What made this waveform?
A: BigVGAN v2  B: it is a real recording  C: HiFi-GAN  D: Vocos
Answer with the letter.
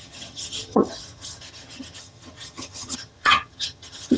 C